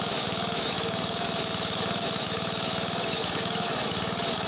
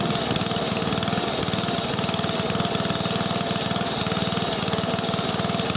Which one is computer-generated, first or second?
first